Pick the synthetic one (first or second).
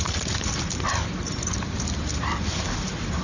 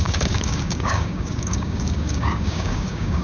second